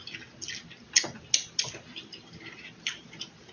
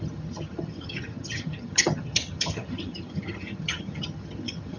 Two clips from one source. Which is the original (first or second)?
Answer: first